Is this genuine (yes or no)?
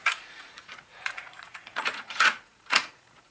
no